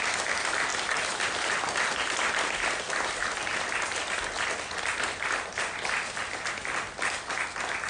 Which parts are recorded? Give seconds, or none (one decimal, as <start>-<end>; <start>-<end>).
0.0-7.9